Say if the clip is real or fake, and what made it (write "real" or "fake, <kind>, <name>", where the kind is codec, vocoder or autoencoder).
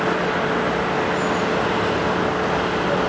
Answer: real